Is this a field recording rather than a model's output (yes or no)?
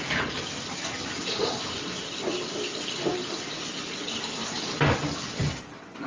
yes